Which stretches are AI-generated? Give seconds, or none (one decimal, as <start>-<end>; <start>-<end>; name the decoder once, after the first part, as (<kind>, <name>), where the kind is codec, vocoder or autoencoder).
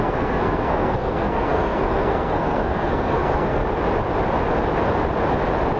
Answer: 0.0-3.6 (codec, SNAC)